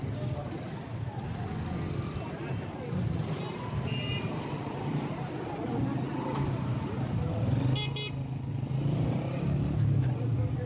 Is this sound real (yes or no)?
yes